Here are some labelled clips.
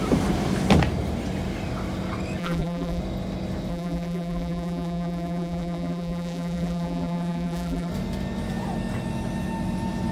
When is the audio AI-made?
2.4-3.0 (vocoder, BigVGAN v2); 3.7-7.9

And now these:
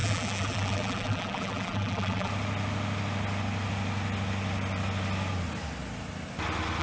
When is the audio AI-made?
0.0-2.3 (vocoder, BigVGAN v2)

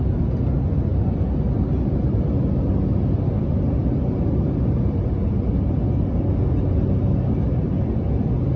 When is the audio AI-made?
3.8-4.7 (vocoder, BigVGAN v2)

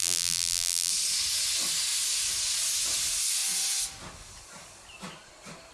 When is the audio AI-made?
0.0-0.9 (vocoder, BigVGAN v2)

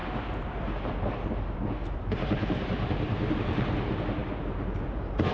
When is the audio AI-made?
1.8-3.4 (vocoder, BigVGAN v2); 4.2-5.3

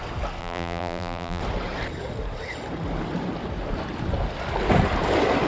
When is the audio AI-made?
0.4-1.4 (vocoder, BigVGAN v2)

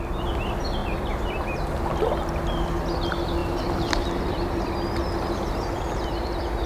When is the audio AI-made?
0.8-1.3 (vocoder, BigVGAN v2); 3.4-4.7

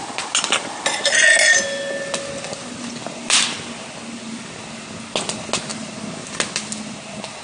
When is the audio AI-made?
none